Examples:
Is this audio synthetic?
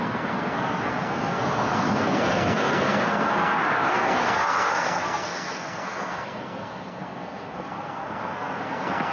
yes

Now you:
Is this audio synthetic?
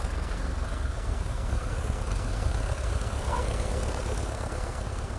yes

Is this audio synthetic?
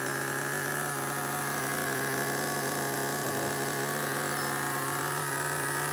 no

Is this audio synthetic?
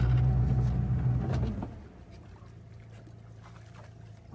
no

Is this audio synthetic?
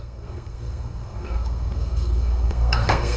yes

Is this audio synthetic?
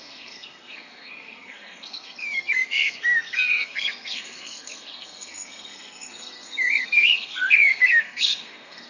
yes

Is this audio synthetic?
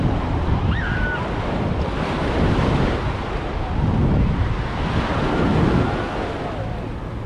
no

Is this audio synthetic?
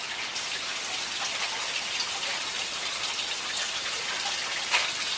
no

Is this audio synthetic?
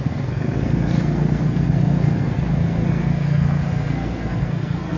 yes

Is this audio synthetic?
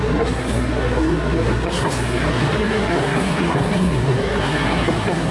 yes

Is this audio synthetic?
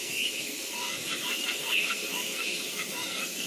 yes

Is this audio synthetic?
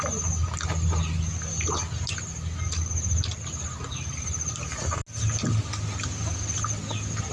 no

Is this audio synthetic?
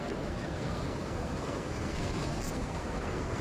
yes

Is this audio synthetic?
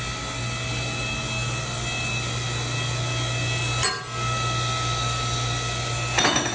no